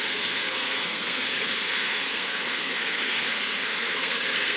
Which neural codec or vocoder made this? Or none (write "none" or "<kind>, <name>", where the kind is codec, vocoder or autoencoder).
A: codec, SNAC